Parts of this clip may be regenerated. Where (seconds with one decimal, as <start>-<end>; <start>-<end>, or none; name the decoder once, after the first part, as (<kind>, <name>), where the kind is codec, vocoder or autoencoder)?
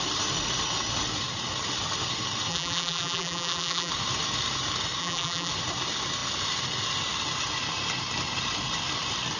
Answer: 2.5-3.9 (vocoder, BigVGAN v2); 5.0-5.5